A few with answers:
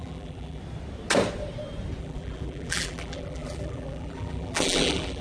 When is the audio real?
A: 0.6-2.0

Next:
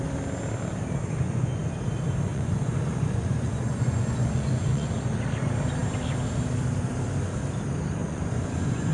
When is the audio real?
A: 0.0-1.0; 1.6-2.3; 5.0-8.0

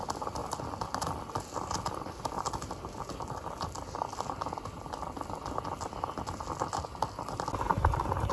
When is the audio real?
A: 0.0-7.7

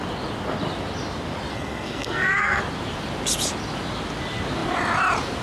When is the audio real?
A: 0.0-1.5; 2.6-5.4

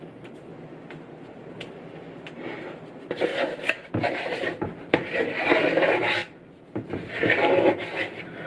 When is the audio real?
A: 0.5-2.9; 3.3-3.9; 6.2-6.8

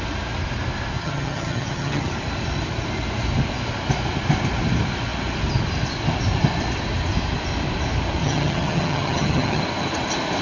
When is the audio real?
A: 0.0-1.0; 2.1-8.2; 9.6-10.4